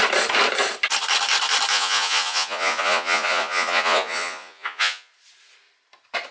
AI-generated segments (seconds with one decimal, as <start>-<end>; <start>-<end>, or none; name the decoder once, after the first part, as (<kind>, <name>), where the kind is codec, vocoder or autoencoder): 1.7-5.1 (vocoder, Vocos)